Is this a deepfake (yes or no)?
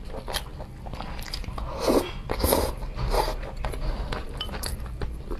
no